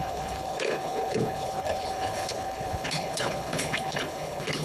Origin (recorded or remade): remade